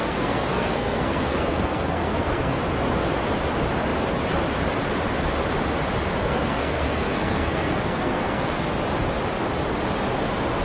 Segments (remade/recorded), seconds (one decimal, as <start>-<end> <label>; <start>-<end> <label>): 0.0-2.6 remade; 2.6-6.2 recorded; 6.2-8.7 remade; 8.7-10.6 recorded